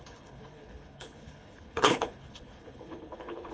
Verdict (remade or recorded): remade